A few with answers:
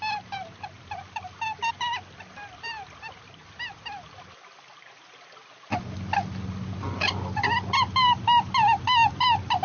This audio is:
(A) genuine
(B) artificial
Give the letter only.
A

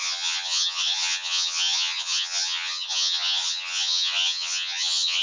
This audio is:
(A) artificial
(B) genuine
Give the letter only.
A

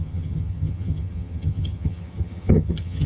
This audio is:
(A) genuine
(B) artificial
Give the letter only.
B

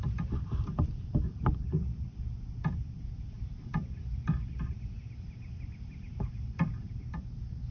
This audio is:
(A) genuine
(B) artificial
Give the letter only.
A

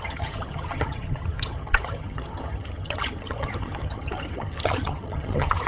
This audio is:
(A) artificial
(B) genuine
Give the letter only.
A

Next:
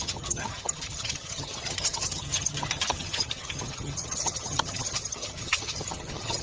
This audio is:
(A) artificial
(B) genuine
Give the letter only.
A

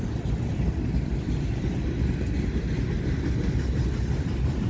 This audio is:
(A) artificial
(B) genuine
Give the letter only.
B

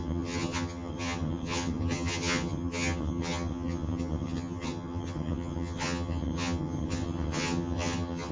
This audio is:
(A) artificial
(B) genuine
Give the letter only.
A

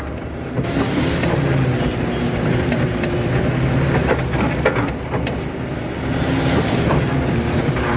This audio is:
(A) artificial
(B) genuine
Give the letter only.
B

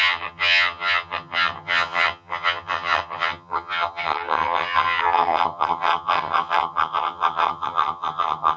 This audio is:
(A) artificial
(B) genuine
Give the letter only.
A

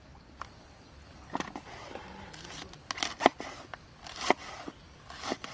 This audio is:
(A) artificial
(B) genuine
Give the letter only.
B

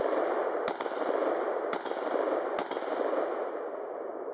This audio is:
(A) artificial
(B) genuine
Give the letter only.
B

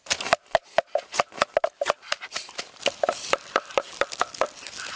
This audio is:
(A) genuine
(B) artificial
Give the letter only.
A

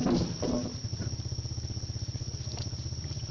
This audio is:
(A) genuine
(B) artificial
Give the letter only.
A